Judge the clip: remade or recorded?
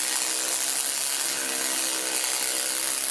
recorded